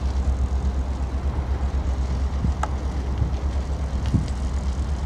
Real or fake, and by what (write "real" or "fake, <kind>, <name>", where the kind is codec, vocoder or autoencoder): real